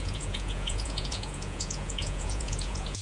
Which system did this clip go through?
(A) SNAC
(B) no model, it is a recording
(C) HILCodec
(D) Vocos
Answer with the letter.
D